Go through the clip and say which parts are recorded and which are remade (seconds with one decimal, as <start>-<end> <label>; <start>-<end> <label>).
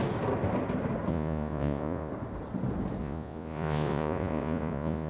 0.0-1.1 recorded; 1.1-2.1 remade; 2.1-3.0 recorded; 3.0-5.1 remade